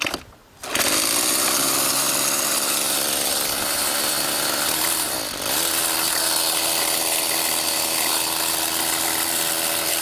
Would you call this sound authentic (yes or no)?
yes